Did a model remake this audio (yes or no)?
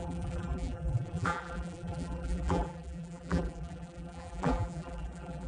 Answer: yes